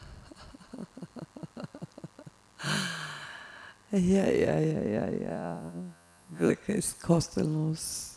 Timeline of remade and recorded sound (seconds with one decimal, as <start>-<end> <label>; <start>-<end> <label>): 0.0-5.3 recorded; 5.3-6.5 remade; 6.5-8.2 recorded